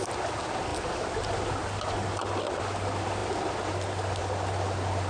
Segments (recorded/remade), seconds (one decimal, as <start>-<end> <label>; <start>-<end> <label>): 0.0-5.1 recorded